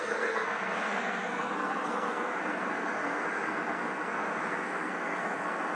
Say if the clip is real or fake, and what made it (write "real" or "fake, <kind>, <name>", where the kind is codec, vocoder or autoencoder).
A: fake, codec, SNAC